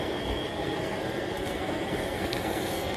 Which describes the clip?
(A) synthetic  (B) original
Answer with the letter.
A